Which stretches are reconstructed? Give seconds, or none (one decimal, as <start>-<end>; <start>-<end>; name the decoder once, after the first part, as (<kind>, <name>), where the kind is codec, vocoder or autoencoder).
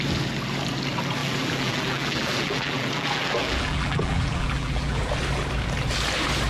1.2-5.1 (vocoder, BigVGAN v2)